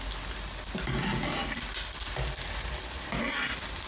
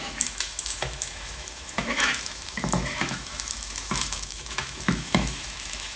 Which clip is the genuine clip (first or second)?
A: first